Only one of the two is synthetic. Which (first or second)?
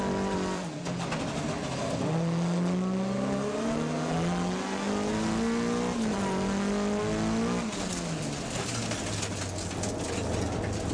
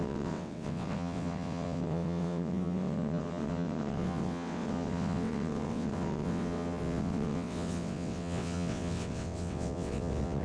second